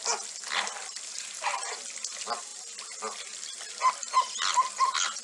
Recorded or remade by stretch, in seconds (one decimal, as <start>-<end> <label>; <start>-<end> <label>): 0.0-5.2 recorded